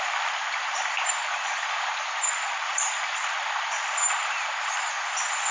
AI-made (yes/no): no